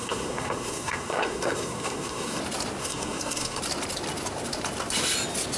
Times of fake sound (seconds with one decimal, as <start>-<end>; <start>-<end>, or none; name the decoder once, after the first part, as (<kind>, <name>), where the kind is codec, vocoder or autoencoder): 0.0-2.4 (codec, SNAC); 2.8-3.6